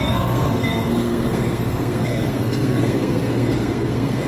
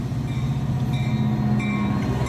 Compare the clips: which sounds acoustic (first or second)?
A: second